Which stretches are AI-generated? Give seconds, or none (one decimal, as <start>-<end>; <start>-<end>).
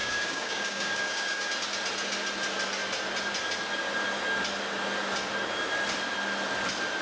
0.0-1.5